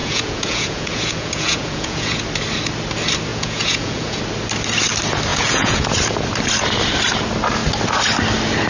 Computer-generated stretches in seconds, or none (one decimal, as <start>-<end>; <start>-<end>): 0.0-2.2; 3.3-4.2; 5.3-5.9